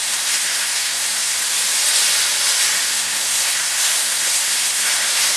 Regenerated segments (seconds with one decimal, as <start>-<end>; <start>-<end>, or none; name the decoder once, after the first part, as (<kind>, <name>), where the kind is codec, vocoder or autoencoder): 0.0-1.4 (codec, SNAC); 2.9-5.4